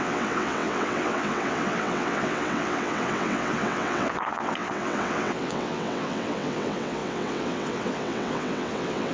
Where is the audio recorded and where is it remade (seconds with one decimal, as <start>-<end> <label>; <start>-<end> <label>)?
0.0-9.1 remade